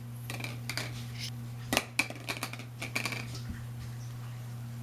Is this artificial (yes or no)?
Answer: no